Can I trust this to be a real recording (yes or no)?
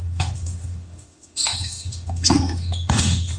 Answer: no